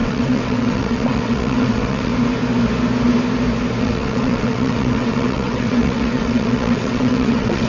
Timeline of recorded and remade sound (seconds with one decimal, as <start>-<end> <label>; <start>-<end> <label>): 0.0-2.1 remade; 2.1-3.8 recorded; 3.8-7.7 remade